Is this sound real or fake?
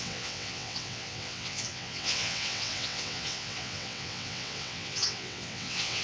fake